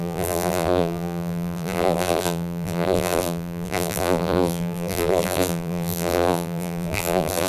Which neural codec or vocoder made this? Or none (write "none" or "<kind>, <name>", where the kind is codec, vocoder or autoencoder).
vocoder, BigVGAN v2